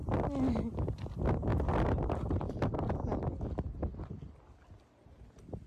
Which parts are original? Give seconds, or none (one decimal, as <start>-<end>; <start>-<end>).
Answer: 0.0-5.7